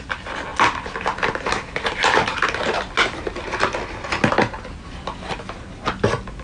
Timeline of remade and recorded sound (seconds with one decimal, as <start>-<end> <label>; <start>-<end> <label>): 0.0-6.4 recorded